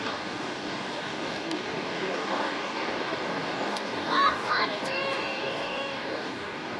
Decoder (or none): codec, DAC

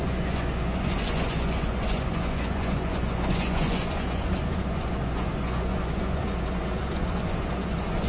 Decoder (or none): vocoder, Vocos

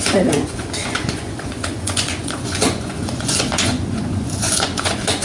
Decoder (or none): vocoder, Vocos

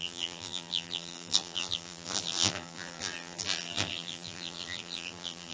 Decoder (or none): vocoder, BigVGAN v2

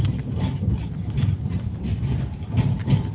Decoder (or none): none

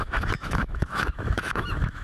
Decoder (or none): autoencoder, DAC-VAE